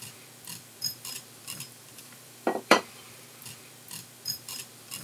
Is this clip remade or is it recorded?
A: remade